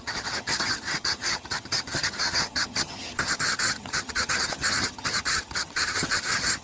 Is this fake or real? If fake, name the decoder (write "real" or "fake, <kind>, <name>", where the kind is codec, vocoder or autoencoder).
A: fake, vocoder, HiFi-GAN